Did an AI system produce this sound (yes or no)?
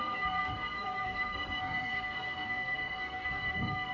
yes